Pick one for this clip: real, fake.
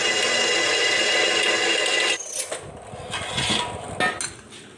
real